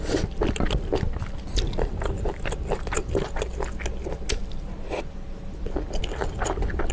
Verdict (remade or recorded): recorded